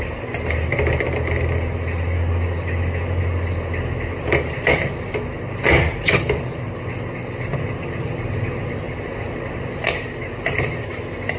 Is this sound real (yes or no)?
yes